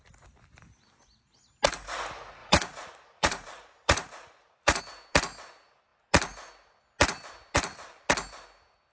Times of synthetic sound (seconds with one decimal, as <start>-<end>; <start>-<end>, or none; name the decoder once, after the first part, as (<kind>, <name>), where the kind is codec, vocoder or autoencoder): 2.4-4.8 (vocoder, Vocos)